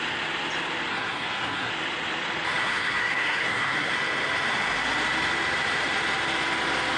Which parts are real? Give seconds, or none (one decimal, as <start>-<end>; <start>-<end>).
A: 0.0-0.9; 1.7-2.6; 3.9-7.0